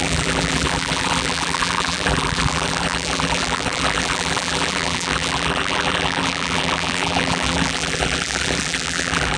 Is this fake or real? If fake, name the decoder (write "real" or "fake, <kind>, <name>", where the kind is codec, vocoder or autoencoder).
fake, vocoder, BigVGAN v2